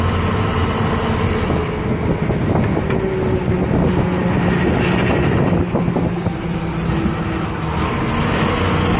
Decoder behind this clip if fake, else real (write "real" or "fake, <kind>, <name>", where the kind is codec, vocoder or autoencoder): real